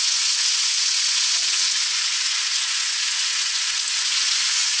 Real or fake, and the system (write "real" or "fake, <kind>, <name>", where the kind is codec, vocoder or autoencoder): fake, vocoder, Vocos